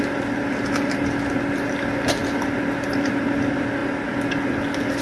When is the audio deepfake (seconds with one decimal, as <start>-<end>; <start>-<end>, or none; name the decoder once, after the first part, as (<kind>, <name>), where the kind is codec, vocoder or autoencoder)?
none